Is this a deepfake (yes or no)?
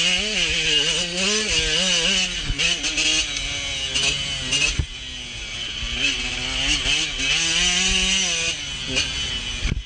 no